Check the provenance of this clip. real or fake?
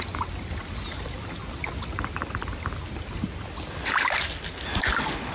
real